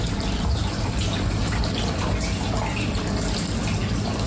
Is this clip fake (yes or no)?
no